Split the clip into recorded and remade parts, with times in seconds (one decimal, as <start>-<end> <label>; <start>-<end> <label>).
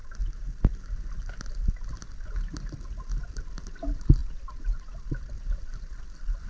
0.0-6.5 recorded